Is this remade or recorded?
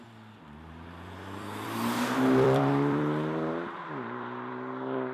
remade